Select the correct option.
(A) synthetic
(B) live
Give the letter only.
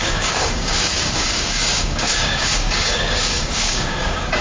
A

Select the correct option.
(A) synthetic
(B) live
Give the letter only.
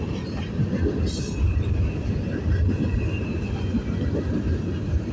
B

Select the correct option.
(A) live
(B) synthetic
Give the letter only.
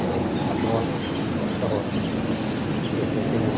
A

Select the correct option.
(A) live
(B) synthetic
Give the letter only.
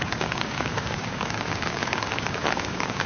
B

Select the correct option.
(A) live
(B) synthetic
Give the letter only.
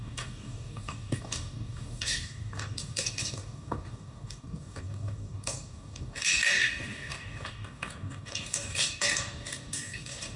B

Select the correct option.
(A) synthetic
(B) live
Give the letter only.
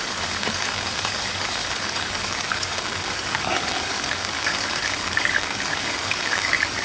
A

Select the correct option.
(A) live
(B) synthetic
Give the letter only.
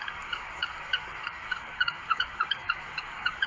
B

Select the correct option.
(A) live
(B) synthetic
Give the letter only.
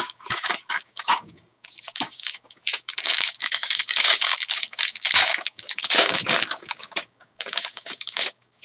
B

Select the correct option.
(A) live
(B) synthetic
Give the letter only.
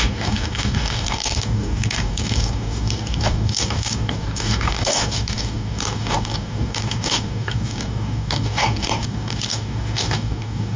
B